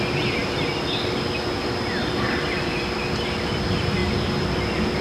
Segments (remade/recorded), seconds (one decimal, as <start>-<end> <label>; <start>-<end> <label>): 0.0-5.0 recorded